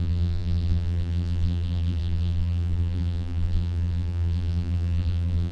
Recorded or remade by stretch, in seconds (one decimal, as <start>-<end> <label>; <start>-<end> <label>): 0.0-5.5 remade